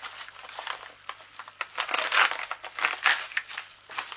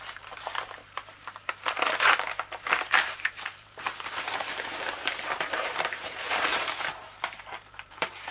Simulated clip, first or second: second